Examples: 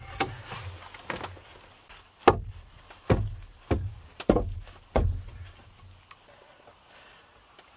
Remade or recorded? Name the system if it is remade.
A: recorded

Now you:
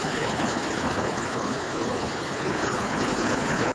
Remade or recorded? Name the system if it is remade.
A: remade, codec, HILCodec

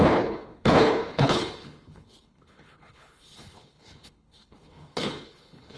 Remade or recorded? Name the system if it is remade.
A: remade, codec, HILCodec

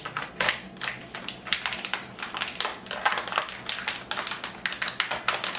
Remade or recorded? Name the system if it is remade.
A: recorded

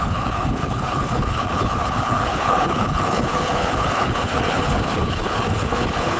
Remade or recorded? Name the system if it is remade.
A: remade, codec, HILCodec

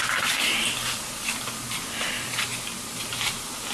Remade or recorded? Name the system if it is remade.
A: recorded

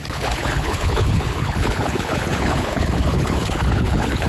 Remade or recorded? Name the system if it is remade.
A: remade, codec, HILCodec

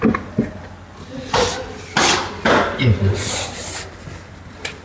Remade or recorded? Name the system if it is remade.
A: recorded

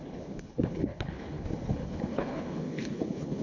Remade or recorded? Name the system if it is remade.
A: remade, codec, HILCodec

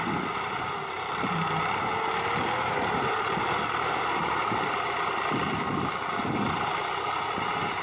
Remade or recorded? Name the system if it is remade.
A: recorded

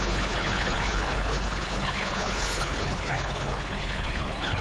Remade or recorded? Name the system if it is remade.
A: remade, codec, HILCodec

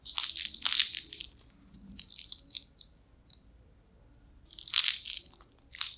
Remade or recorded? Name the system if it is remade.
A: recorded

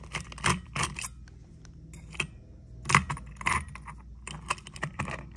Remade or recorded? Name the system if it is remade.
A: recorded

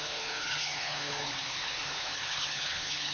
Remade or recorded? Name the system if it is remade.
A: remade, codec, HILCodec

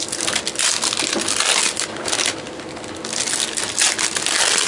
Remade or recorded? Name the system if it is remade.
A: recorded